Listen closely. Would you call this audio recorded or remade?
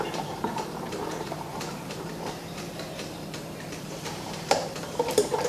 remade